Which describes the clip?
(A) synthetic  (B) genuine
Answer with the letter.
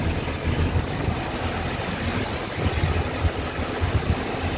B